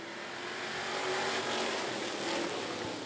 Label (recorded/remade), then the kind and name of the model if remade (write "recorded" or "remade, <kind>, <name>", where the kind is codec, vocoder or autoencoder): recorded